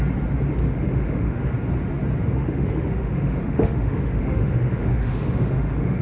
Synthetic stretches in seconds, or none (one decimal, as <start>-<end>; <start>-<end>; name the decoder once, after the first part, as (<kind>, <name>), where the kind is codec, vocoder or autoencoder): 0.6-1.5 (autoencoder, DAC-VAE); 2.3-6.0